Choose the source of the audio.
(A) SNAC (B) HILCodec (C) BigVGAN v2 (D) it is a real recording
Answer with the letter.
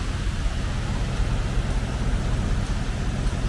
C